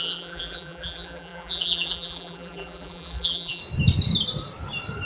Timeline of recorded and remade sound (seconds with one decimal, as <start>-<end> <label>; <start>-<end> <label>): 0.0-3.6 remade; 3.6-5.1 recorded